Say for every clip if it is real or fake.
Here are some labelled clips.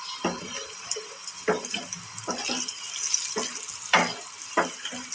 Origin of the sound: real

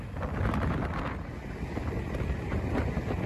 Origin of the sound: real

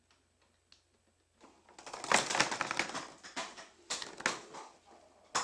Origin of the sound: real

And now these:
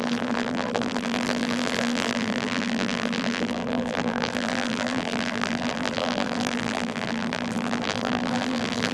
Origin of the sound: fake